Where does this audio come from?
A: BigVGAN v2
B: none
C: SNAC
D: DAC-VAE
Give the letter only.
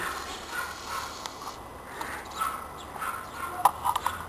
B